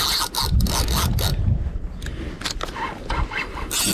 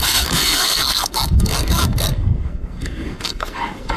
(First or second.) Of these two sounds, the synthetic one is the second